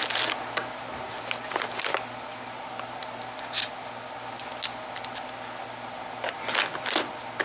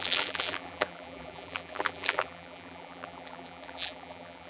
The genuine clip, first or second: first